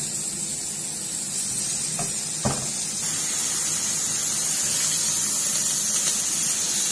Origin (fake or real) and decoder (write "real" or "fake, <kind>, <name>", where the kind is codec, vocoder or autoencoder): real